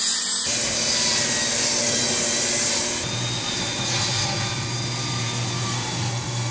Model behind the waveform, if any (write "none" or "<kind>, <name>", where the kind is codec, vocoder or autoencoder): none